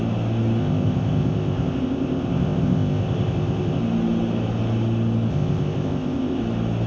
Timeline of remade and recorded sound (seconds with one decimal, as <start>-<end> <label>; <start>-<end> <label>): 0.0-0.6 recorded; 0.6-3.8 remade; 3.8-5.3 recorded; 5.3-6.4 remade; 6.4-6.9 recorded